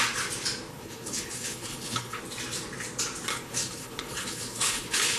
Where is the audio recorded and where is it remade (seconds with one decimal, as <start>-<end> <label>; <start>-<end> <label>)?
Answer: 0.0-0.7 recorded; 0.7-2.2 remade; 2.2-3.3 recorded; 3.3-5.2 remade